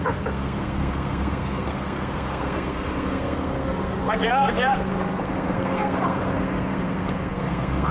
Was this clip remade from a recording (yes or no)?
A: yes